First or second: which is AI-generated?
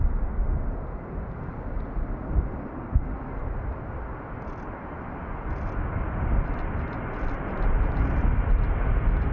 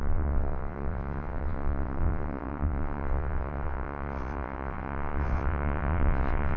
second